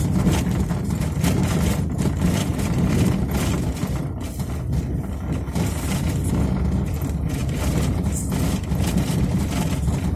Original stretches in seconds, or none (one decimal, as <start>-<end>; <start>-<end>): 0.0-2.5; 3.1-10.2